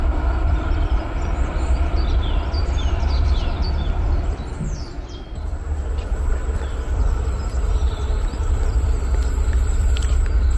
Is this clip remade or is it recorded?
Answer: remade